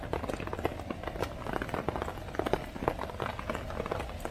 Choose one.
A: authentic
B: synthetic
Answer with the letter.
A